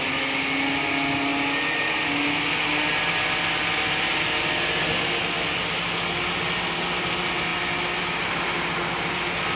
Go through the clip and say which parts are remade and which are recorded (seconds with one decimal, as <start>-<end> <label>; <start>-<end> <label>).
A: 0.0-9.6 recorded